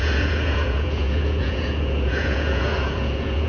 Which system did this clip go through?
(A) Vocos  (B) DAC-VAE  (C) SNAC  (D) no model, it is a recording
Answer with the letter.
A